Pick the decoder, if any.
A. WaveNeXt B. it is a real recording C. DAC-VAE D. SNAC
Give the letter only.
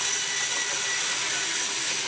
B